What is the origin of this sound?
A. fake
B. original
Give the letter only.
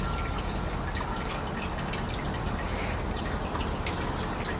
B